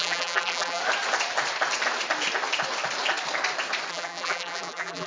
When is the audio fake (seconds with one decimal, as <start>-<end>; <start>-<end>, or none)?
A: 0.0-0.8; 3.9-5.1